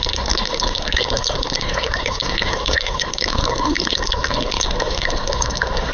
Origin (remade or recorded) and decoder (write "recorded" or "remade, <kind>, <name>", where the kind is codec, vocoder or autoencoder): remade, codec, SNAC